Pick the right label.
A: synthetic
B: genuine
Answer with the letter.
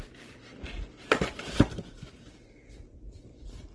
A